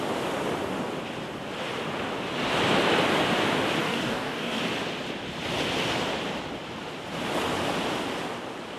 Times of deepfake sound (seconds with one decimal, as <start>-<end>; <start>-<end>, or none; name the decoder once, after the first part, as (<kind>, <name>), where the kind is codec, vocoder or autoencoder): 3.8-4.6 (codec, DAC)